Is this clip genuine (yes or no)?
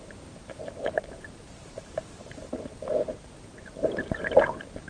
no